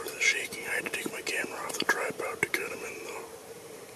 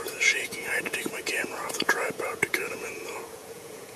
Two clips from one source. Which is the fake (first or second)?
second